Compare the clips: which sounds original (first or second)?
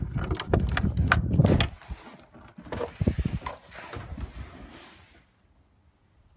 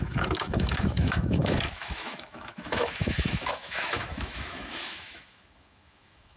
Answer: first